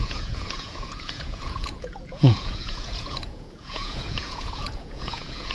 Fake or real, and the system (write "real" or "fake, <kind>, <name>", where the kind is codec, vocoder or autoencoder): fake, vocoder, Vocos